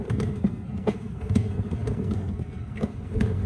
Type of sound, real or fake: fake